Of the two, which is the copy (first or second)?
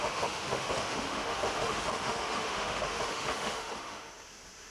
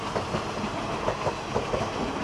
first